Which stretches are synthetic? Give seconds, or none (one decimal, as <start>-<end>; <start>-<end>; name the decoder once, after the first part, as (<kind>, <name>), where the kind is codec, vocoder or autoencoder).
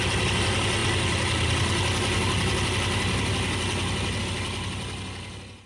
none